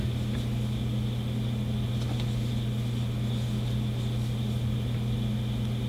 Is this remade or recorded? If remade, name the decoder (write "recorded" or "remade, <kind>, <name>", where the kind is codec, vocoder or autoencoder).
recorded